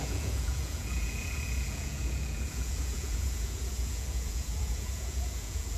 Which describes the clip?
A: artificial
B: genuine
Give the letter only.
A